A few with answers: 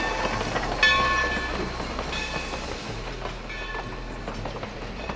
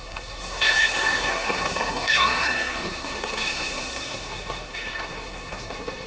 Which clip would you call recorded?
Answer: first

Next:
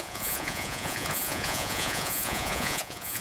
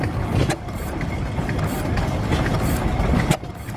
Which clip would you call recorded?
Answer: second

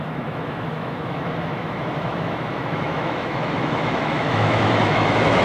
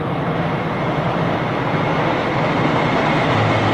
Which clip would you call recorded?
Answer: second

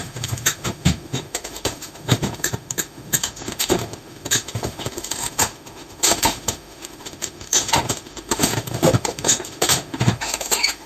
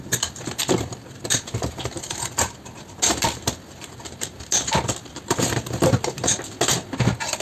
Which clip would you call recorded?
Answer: second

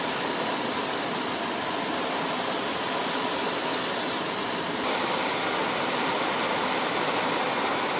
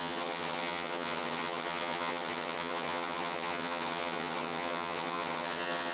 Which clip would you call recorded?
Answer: first